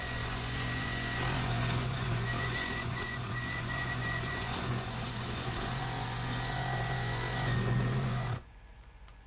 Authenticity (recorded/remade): remade